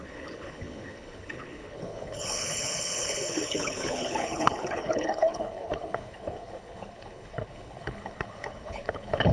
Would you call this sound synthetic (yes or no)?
yes